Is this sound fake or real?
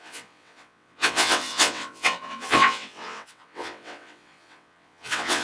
fake